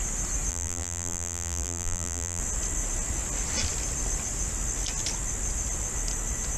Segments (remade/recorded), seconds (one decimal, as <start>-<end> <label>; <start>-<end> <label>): 0.0-0.5 recorded; 0.5-2.4 remade; 2.4-6.6 recorded